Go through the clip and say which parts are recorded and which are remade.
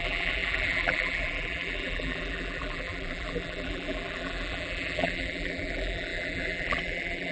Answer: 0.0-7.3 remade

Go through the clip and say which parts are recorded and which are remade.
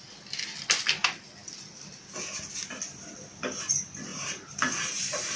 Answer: 0.0-4.1 recorded; 4.1-5.4 remade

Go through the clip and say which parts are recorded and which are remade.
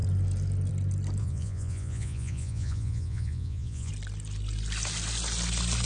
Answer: 0.0-1.2 recorded; 1.2-3.9 remade; 3.9-5.9 recorded